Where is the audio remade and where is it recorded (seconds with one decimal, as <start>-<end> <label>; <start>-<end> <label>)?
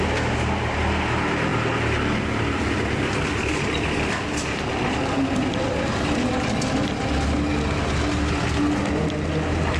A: 0.0-9.8 recorded